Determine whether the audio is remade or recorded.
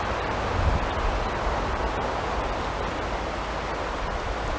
recorded